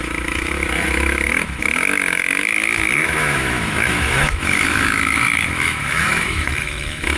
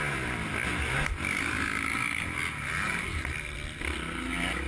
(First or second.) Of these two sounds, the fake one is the first